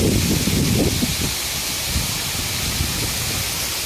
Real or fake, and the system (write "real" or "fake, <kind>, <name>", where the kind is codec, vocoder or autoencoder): real